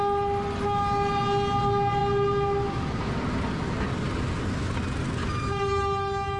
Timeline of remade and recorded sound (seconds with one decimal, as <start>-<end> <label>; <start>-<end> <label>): 0.0-6.4 recorded